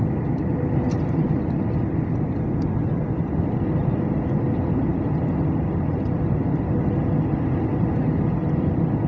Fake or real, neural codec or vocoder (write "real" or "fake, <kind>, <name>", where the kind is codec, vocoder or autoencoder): real